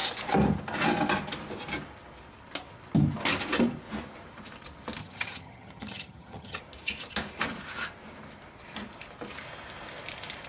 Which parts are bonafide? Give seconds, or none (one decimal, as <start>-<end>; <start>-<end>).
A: 0.0-5.0; 6.6-10.5